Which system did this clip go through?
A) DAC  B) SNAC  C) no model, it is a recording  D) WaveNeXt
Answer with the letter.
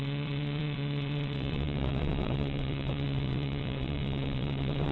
D